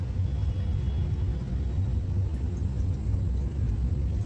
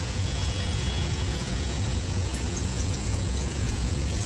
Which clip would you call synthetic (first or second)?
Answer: second